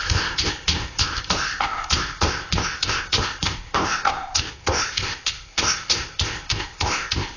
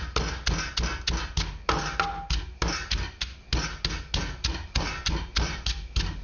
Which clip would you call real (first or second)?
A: second